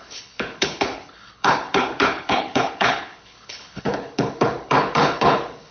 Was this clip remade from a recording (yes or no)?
yes